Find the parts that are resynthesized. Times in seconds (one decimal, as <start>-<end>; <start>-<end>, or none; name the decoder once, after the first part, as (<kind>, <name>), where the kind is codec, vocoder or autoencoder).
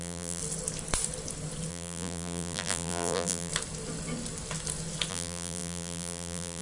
0.0-0.4 (vocoder, BigVGAN v2); 1.7-3.5; 5.1-6.6